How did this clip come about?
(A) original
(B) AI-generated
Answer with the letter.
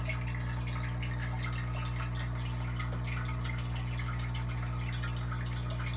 A